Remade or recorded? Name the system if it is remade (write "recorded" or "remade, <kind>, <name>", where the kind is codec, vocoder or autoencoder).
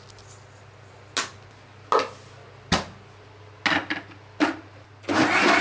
recorded